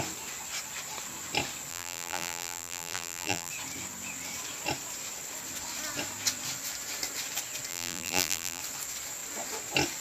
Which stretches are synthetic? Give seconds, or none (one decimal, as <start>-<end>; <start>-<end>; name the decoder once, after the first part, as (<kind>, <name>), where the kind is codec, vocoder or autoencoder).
1.7-3.5 (vocoder, BigVGAN v2); 7.7-8.6